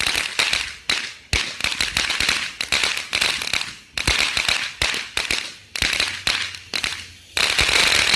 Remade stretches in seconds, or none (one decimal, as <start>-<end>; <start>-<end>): none